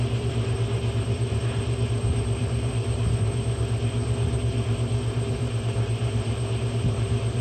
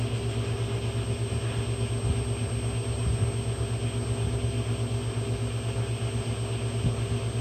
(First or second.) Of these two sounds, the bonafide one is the second